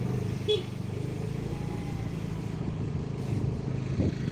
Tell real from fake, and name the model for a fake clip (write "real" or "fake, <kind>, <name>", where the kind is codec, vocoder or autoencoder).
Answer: real